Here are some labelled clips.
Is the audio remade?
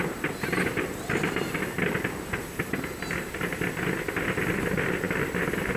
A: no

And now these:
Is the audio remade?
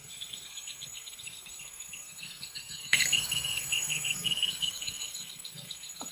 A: yes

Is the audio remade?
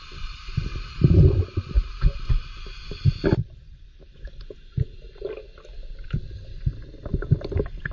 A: no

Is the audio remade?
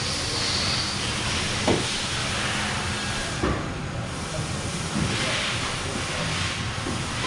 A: no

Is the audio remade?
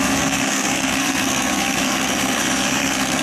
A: yes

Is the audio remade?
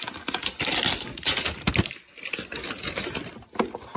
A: no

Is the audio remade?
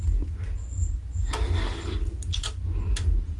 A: no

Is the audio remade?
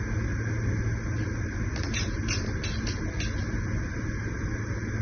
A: no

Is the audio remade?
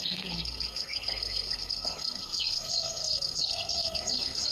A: yes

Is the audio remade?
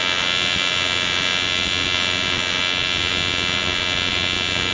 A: no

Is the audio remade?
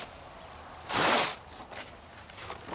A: no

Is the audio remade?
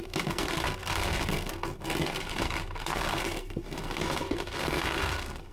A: yes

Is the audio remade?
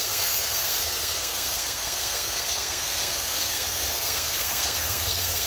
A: yes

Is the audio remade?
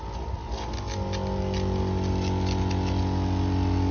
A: no